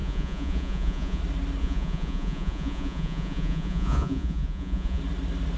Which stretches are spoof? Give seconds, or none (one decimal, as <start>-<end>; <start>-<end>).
0.0-1.2; 1.6-5.0